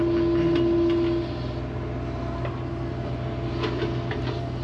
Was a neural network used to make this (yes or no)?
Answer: no